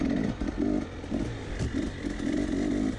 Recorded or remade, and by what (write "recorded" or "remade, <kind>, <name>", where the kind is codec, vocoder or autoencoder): recorded